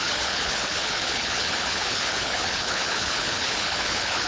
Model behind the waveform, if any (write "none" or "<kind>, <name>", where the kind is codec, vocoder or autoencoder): codec, HILCodec